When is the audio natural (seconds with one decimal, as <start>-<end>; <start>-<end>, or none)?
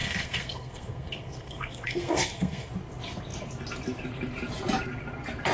2.7-5.5